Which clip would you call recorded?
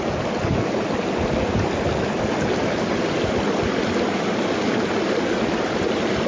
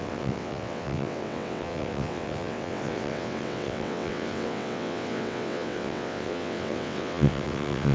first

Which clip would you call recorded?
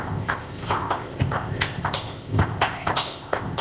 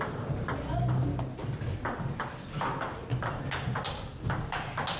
second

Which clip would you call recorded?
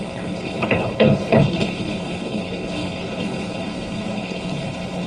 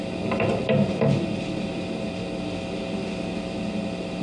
second